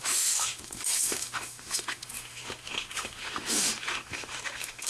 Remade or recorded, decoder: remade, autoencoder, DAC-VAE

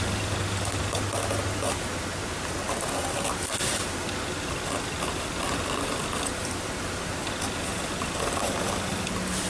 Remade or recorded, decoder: recorded